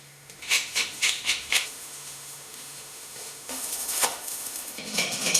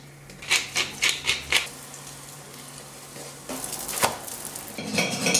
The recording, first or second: second